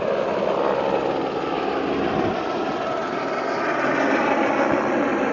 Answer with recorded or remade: recorded